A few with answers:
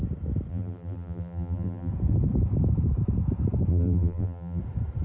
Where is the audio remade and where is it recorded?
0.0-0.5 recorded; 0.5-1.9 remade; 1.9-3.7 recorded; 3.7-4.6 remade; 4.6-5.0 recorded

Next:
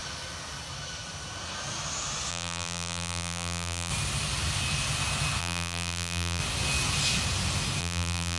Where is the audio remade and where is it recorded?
0.0-2.3 recorded; 2.3-3.9 remade; 3.9-5.4 recorded; 5.4-6.4 remade; 6.4-7.8 recorded; 7.8-8.4 remade

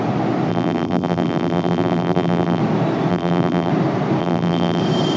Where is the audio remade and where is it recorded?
0.0-0.5 recorded; 0.5-2.6 remade; 2.6-3.1 recorded; 3.1-3.7 remade; 3.7-4.2 recorded; 4.2-4.8 remade; 4.8-5.2 recorded

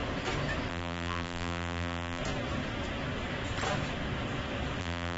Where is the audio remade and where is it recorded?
0.0-0.7 recorded; 0.7-2.2 remade; 2.2-4.8 recorded; 4.8-5.2 remade

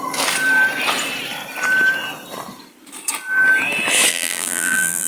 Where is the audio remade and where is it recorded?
0.0-4.1 recorded; 4.1-5.1 remade

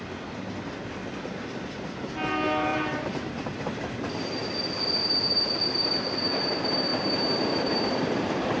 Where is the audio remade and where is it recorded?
0.0-2.7 recorded; 2.7-3.7 remade; 3.7-6.9 recorded; 6.9-8.6 remade

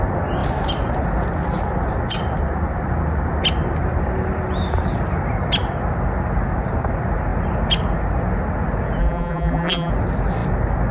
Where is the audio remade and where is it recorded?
0.0-9.0 recorded; 9.0-9.9 remade; 9.9-10.9 recorded

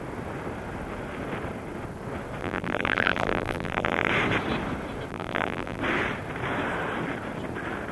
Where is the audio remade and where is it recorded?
0.0-2.4 recorded; 2.4-4.1 remade; 4.1-5.1 recorded; 5.1-5.8 remade; 5.8-7.9 recorded